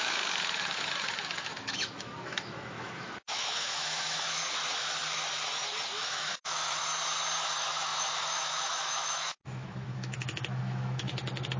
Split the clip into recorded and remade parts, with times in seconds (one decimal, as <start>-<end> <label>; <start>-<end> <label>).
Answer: 0.0-4.4 remade; 4.4-6.1 recorded; 6.1-6.9 remade; 6.9-7.4 recorded; 7.4-11.6 remade